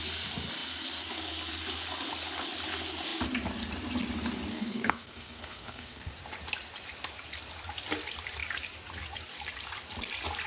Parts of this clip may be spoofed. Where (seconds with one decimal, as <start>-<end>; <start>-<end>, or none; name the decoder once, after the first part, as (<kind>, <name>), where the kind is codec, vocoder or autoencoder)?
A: 4.5-6.1 (codec, SNAC)